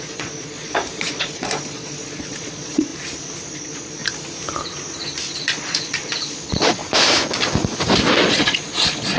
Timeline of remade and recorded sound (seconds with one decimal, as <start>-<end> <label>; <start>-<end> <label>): 0.0-2.9 remade; 2.9-3.5 recorded; 3.5-4.0 remade; 4.0-5.4 recorded; 5.4-6.8 remade; 6.8-8.2 recorded; 8.2-9.2 remade